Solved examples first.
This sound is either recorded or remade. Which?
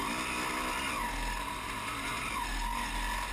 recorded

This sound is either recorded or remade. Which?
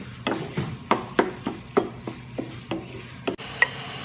recorded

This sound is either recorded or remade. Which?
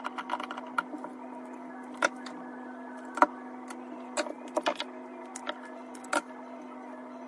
recorded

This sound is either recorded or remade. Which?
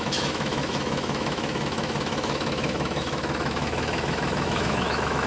remade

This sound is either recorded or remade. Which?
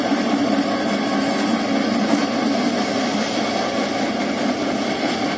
recorded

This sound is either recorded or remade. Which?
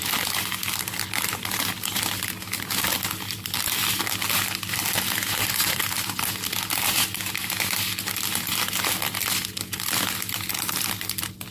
recorded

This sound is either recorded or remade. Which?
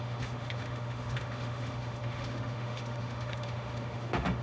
remade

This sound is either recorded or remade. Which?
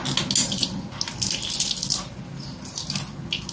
recorded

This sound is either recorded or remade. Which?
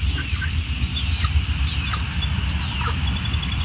recorded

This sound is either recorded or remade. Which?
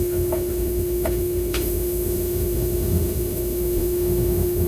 remade